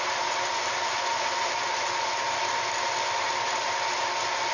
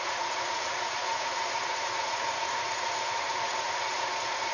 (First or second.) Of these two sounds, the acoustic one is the first